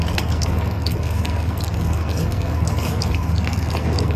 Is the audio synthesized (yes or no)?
yes